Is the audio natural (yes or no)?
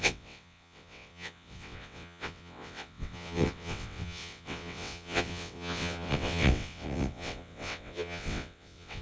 no